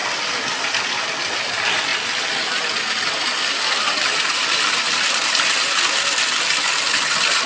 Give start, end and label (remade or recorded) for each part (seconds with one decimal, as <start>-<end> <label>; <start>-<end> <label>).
0.0-7.5 recorded

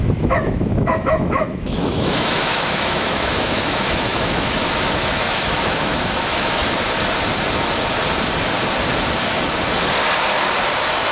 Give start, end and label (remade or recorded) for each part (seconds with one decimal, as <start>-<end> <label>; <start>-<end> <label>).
0.0-6.6 remade; 6.6-11.1 recorded

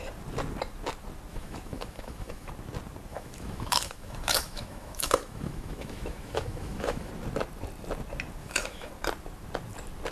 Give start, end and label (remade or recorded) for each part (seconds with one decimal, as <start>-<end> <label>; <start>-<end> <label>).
0.0-1.3 recorded; 1.3-2.5 remade; 2.5-3.1 recorded; 3.1-7.1 remade; 7.1-8.4 recorded; 8.4-8.9 remade; 8.9-10.1 recorded

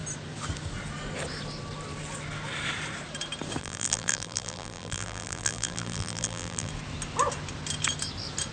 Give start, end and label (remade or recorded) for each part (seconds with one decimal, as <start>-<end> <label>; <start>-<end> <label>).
0.0-3.6 recorded; 3.6-6.7 remade; 6.7-8.5 recorded